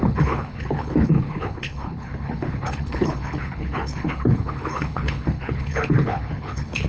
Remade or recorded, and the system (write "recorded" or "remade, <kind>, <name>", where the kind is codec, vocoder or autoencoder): remade, codec, HILCodec